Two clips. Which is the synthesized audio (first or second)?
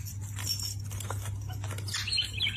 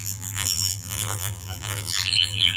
second